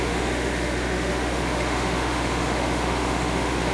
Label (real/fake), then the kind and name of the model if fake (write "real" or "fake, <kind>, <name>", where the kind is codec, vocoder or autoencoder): fake, autoencoder, DAC-VAE